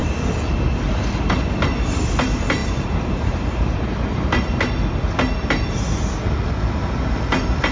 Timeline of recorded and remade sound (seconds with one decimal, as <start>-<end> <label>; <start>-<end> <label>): 0.0-2.6 recorded; 2.6-4.5 remade; 4.5-7.7 recorded